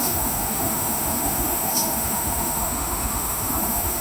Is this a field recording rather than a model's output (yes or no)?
no